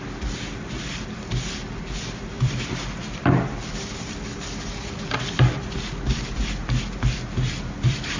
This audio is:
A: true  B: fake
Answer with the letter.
B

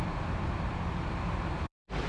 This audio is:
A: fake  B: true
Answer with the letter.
A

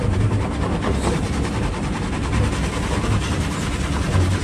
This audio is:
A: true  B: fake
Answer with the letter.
A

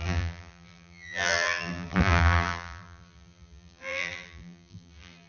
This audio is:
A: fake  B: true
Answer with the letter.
A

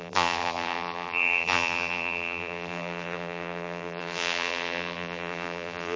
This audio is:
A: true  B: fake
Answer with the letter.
B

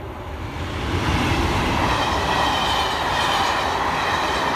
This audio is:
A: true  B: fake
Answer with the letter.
B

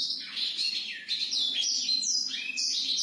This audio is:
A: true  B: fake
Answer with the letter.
B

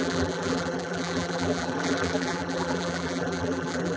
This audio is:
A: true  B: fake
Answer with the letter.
B